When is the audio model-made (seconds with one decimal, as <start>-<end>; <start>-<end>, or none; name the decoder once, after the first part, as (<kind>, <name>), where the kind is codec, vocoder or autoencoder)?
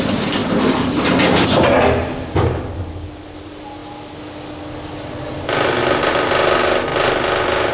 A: none